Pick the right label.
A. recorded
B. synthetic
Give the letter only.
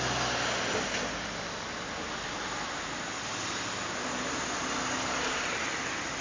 A